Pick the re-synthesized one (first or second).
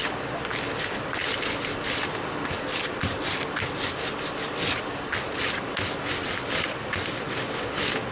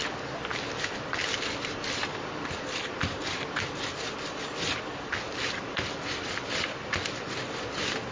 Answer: second